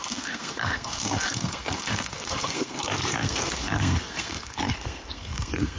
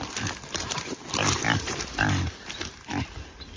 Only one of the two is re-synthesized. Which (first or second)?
first